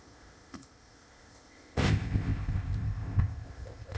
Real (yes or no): no